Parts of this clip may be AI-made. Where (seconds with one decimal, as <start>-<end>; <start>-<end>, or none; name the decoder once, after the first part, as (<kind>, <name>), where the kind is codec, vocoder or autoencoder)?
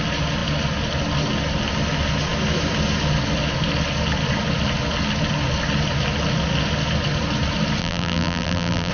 7.8-8.9 (vocoder, BigVGAN v2)